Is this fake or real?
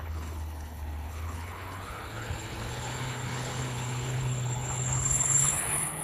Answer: fake